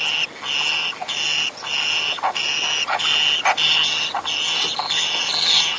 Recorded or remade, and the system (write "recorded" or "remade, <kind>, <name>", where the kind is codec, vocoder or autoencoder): recorded